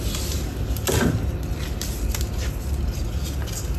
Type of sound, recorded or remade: recorded